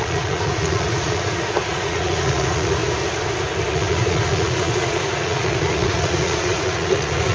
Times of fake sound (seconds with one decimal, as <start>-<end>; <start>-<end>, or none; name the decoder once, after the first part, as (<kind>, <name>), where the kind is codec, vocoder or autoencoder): 0.0-2.8 (vocoder, Vocos); 3.7-7.3